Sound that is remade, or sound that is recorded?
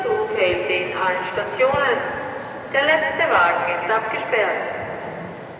recorded